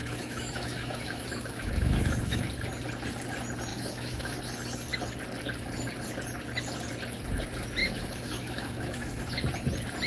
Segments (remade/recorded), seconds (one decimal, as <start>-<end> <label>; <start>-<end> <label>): 0.0-2.4 remade; 2.4-3.7 recorded; 3.7-4.4 remade; 4.4-7.8 recorded; 7.8-9.2 remade; 9.2-10.1 recorded